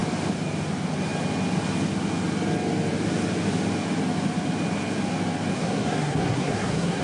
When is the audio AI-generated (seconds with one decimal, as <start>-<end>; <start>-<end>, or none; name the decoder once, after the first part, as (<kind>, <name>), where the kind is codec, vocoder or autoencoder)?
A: 5.6-7.0 (codec, SNAC)